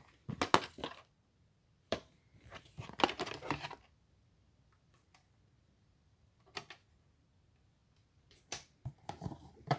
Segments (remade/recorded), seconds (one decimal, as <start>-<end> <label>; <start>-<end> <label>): 0.0-1.6 recorded; 1.6-6.4 remade; 6.4-7.8 recorded; 7.8-9.8 remade